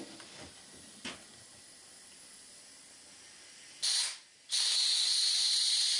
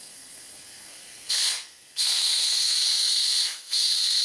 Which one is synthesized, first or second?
second